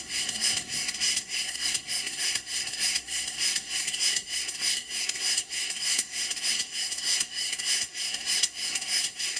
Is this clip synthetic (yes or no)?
yes